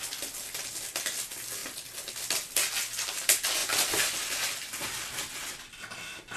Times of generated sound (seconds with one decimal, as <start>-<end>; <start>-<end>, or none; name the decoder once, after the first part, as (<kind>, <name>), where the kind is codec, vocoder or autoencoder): none